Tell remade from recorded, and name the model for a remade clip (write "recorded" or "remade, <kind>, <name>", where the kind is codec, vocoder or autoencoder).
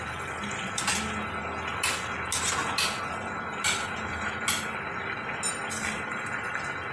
recorded